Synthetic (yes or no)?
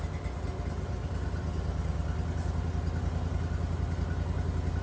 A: no